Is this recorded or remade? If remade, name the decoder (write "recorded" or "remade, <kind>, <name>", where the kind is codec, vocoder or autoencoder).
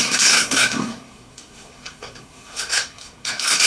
remade, codec, SNAC